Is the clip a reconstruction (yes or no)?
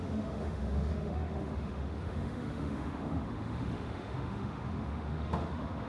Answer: yes